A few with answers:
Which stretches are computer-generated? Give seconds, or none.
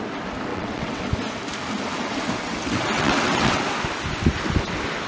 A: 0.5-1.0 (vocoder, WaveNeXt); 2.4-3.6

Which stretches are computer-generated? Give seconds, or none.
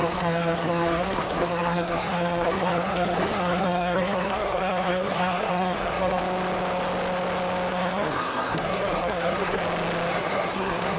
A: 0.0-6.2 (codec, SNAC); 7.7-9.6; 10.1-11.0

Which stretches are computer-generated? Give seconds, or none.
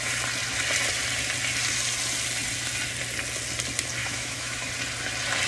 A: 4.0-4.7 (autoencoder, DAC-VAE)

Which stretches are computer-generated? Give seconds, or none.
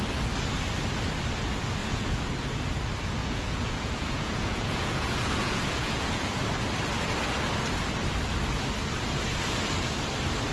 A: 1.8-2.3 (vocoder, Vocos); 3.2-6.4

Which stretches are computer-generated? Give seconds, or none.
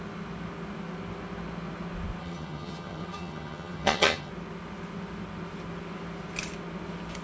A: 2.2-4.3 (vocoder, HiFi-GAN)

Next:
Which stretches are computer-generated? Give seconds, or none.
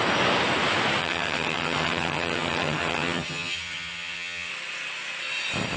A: 1.0-4.5 (vocoder, HiFi-GAN)